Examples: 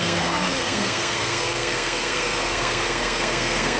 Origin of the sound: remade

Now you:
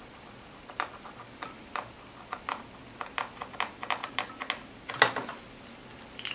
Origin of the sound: recorded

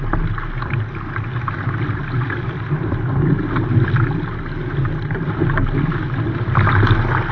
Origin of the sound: recorded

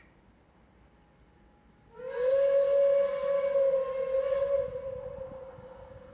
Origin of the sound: recorded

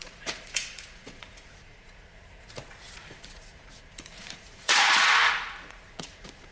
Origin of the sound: remade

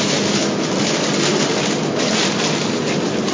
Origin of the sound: recorded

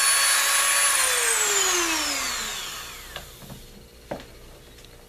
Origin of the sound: recorded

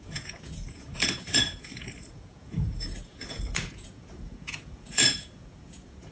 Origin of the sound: remade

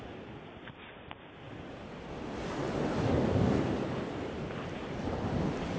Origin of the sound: recorded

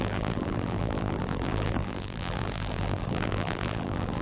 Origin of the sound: remade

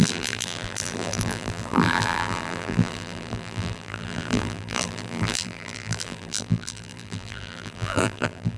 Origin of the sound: remade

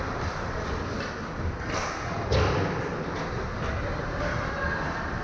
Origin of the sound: recorded